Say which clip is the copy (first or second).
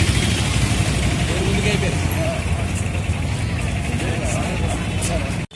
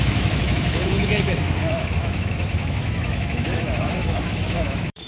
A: second